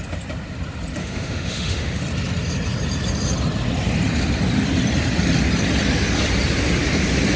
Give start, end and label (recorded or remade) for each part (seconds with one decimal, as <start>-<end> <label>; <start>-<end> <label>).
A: 0.0-1.0 recorded; 1.0-2.0 remade; 2.0-7.4 recorded